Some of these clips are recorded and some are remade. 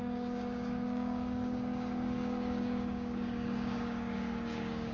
remade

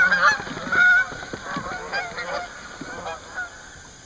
recorded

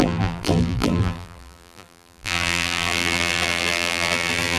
remade